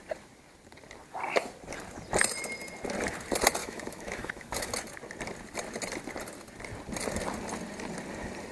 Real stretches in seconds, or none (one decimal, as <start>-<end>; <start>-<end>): 0.0-3.6; 4.7-8.5